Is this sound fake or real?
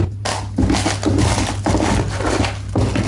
real